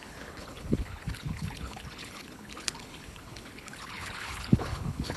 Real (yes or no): no